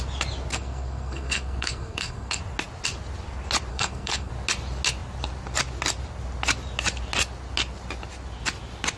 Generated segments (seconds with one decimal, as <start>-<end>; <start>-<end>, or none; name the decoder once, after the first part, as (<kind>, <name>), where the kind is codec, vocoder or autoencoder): 0.5-2.4 (codec, SNAC); 3.7-4.3